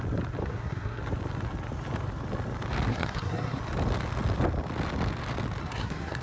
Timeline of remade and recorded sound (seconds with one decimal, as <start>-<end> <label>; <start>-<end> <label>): 0.0-0.4 recorded; 0.4-1.0 remade; 1.0-2.9 recorded; 2.9-3.6 remade; 3.6-5.6 recorded; 5.6-6.2 remade